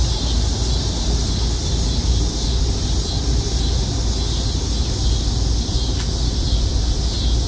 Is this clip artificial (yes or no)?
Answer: no